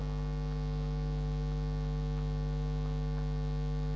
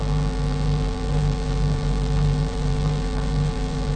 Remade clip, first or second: second